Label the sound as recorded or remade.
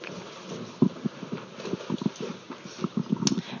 recorded